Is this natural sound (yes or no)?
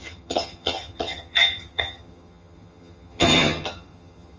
no